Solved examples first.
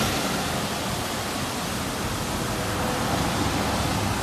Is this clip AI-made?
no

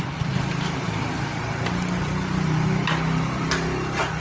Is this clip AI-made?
no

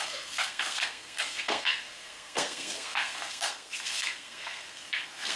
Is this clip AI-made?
yes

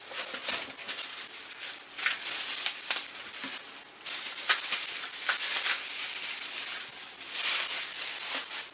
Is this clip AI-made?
no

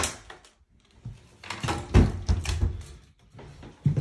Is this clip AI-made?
no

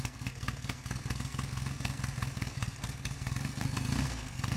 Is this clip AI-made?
yes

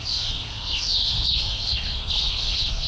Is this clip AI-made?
yes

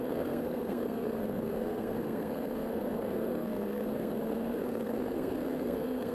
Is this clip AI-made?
yes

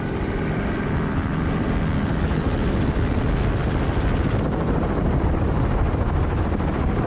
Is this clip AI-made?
no